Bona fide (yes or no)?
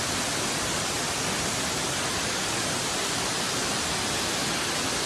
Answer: yes